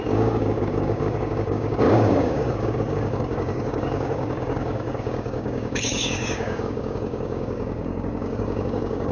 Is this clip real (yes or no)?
no